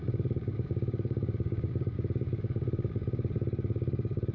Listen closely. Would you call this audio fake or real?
fake